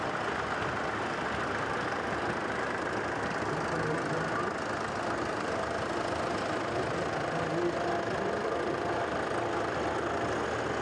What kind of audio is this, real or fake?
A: real